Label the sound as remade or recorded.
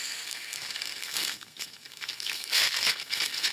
remade